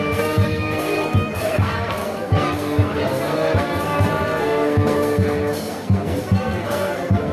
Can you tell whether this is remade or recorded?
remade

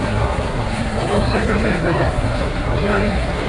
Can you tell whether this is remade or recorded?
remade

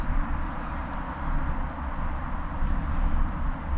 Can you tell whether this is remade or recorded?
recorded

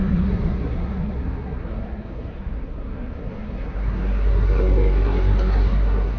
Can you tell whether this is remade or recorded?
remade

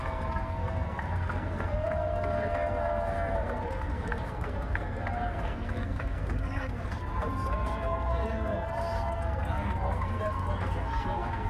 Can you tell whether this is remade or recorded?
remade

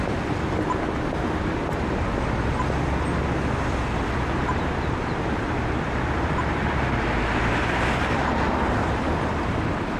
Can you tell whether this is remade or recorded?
recorded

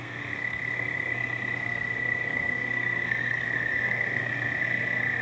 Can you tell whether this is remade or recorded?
remade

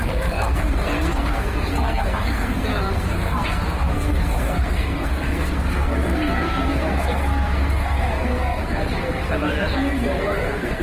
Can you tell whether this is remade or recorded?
remade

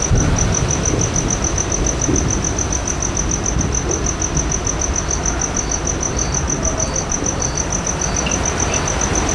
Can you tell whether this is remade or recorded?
recorded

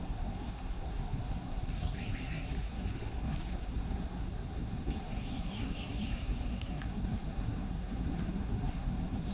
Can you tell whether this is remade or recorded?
remade